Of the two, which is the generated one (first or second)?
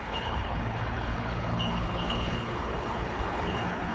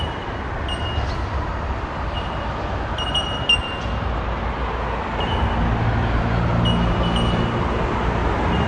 first